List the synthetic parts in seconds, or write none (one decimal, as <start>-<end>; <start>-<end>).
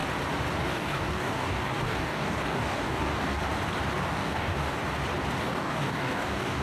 0.6-3.4; 4.1-4.8; 5.4-6.6